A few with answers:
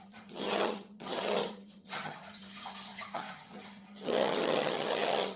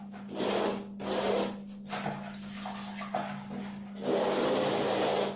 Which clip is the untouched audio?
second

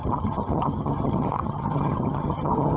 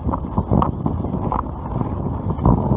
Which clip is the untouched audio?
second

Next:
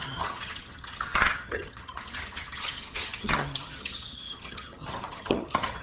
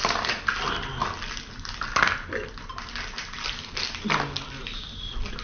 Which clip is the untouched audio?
second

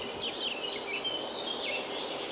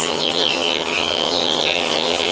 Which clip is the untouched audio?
first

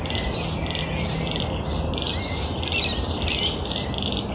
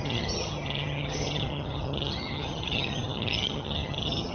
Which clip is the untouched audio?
first